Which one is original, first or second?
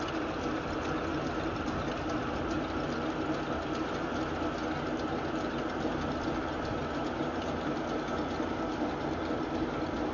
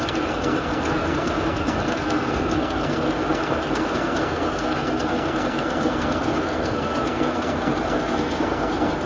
first